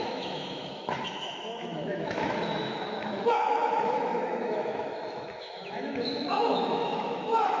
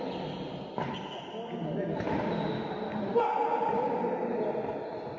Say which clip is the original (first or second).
second